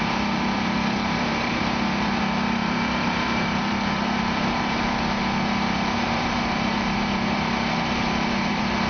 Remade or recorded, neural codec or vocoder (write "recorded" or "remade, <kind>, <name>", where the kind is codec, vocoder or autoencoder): remade, vocoder, BigVGAN v2